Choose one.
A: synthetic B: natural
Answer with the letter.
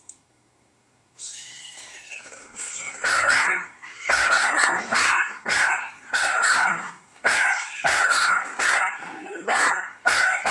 A